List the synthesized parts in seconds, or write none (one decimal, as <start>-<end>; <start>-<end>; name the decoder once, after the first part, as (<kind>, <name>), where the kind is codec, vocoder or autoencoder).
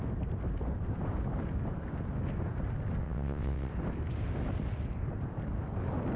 3.0-3.7 (vocoder, WaveNeXt)